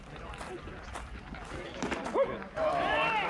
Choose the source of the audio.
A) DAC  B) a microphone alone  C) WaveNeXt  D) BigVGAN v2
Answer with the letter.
D